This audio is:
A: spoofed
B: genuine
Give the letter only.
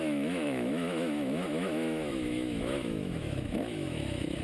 A